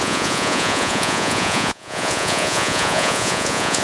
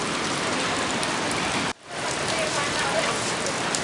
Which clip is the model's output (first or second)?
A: first